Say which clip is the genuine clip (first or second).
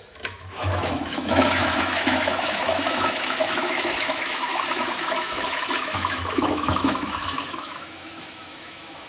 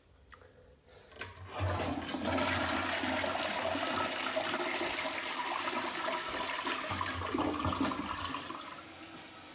second